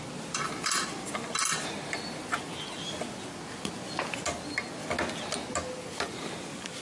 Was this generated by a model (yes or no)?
no